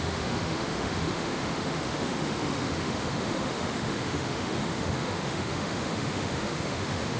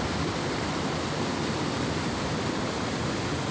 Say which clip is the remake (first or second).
first